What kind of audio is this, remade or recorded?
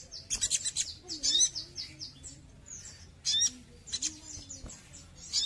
recorded